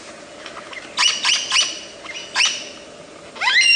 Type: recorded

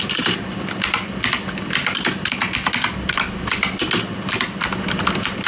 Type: recorded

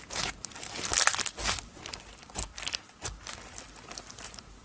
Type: recorded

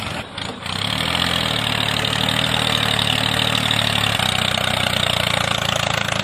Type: recorded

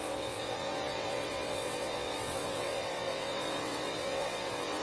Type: remade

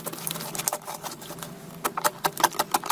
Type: recorded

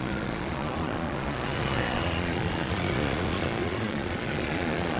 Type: remade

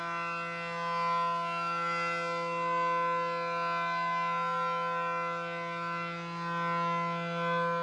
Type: recorded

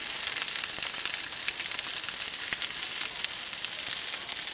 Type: recorded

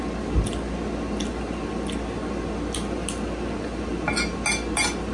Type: recorded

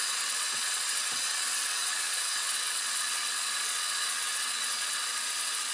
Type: remade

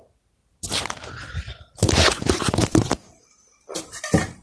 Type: recorded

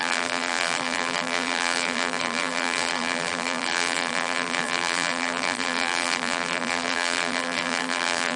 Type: remade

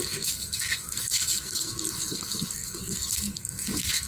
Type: remade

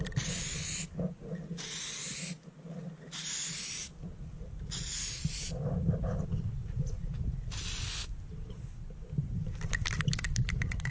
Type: recorded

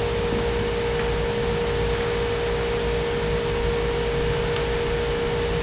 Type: recorded